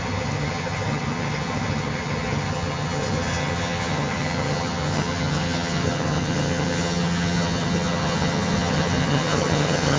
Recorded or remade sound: remade